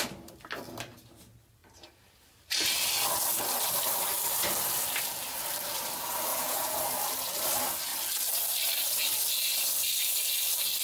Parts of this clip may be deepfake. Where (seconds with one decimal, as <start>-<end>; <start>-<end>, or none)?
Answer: 6.3-6.8